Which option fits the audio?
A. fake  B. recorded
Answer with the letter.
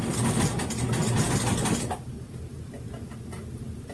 B